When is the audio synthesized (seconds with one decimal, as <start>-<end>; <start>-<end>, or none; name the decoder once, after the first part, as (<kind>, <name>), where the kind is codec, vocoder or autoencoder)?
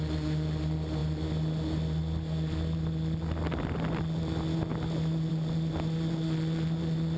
none